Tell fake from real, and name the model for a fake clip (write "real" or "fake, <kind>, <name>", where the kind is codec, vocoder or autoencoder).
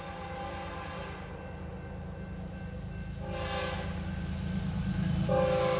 real